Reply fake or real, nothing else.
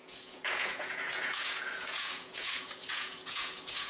fake